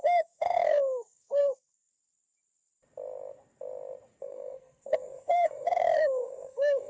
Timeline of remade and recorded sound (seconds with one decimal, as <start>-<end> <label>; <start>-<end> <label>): 0.0-1.9 remade; 1.9-4.2 recorded; 4.2-6.9 remade